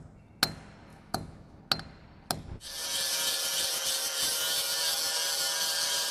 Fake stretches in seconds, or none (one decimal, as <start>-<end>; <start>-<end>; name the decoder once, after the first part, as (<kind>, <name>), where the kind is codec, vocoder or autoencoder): 0.9-1.6 (autoencoder, DAC-VAE)